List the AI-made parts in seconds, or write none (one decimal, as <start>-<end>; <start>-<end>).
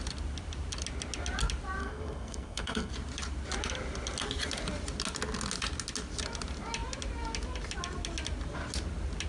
1.8-2.9